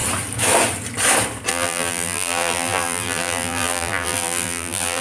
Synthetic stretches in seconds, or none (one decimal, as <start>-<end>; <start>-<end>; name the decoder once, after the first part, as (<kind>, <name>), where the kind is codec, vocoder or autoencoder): 1.5-5.0 (vocoder, BigVGAN v2)